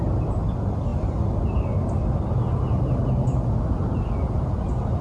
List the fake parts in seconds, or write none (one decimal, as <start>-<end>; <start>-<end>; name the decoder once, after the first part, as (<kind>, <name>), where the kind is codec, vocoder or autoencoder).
none